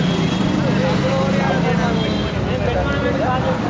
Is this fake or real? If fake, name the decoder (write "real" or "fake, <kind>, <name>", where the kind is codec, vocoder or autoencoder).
real